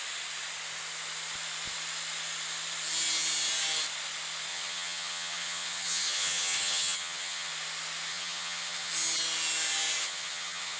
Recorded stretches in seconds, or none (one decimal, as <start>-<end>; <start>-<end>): 0.0-4.5; 7.5-8.1; 8.9-10.0